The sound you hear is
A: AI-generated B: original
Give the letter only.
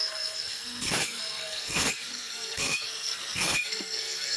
A